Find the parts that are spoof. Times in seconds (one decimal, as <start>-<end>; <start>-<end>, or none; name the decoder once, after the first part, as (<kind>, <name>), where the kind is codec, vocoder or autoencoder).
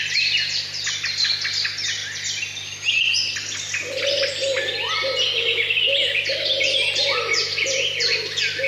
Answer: none